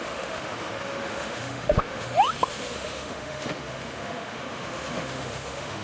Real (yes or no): no